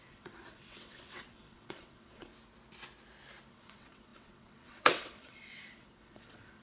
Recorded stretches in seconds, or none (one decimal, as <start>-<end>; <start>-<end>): 2.3-3.5